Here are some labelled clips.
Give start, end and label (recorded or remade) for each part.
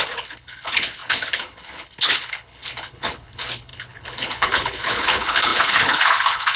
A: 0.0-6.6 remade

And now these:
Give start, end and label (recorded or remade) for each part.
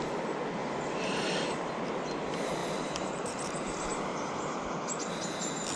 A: 0.0-0.6 recorded; 0.6-1.7 remade; 1.7-2.6 recorded; 2.6-4.6 remade; 4.6-5.8 recorded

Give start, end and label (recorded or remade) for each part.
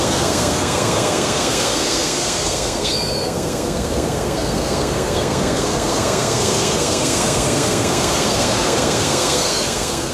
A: 0.0-10.1 remade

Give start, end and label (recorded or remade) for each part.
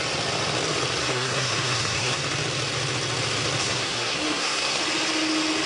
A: 0.0-1.0 recorded; 1.0-2.2 remade; 2.2-3.6 recorded; 3.6-4.8 remade; 4.8-5.7 recorded